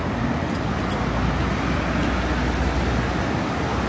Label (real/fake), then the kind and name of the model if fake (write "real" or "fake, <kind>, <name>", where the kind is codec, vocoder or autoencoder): real